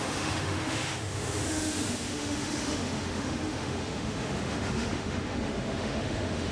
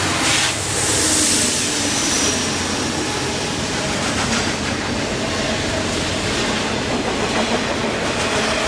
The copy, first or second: first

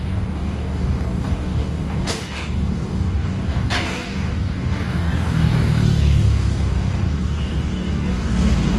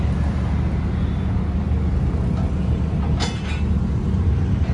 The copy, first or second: first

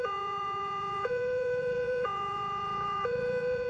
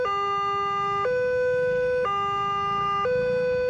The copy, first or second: first